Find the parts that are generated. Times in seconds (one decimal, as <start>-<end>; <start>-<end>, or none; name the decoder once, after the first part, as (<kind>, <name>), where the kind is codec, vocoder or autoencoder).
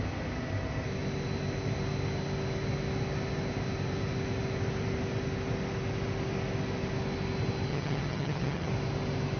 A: 7.7-8.7 (vocoder, HiFi-GAN)